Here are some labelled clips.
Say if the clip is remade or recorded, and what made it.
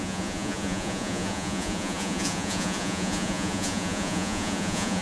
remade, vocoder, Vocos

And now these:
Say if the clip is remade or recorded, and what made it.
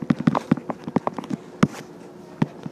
recorded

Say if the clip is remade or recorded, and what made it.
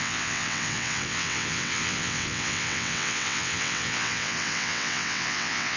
remade, vocoder, WaveNeXt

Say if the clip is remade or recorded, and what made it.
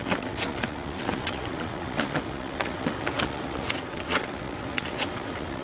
remade, vocoder, WaveNeXt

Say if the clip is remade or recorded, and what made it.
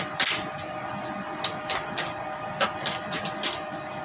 recorded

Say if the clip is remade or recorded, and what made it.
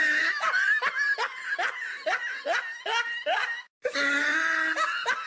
recorded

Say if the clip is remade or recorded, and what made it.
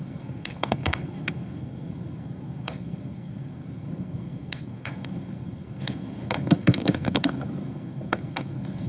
remade, codec, SNAC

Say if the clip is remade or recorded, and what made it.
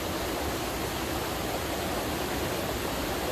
recorded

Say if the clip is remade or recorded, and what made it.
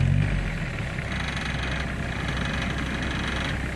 recorded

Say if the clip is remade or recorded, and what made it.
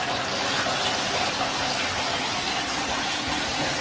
recorded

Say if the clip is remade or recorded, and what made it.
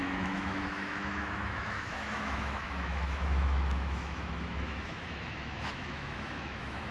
remade, autoencoder, DAC-VAE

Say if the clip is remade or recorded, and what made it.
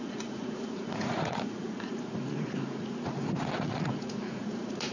remade, vocoder, Vocos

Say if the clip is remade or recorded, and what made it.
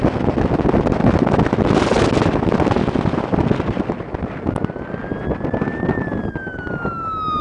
recorded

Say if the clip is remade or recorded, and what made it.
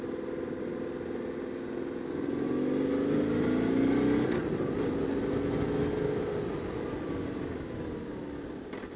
recorded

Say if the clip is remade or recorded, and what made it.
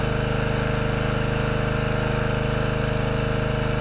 recorded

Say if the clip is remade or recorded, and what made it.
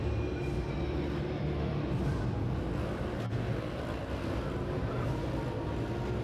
recorded